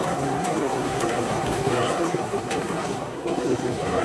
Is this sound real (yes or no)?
no